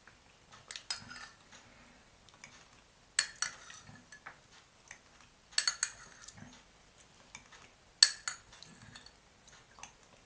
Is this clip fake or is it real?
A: real